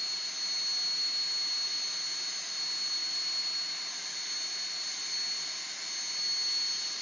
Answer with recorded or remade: recorded